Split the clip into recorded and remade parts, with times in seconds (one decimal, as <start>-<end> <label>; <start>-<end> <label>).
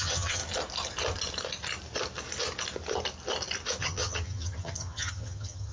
0.0-0.4 remade; 0.4-3.8 recorded; 3.8-5.7 remade